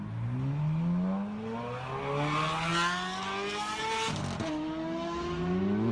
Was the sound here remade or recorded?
recorded